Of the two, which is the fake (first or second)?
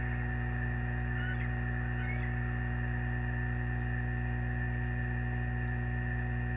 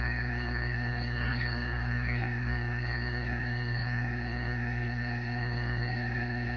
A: second